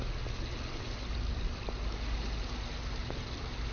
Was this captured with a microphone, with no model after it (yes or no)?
yes